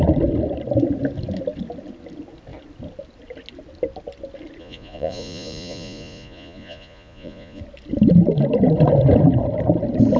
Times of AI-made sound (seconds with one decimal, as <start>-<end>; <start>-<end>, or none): 4.6-7.6